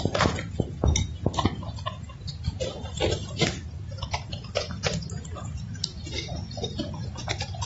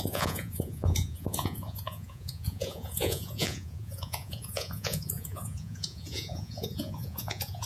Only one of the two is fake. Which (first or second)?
second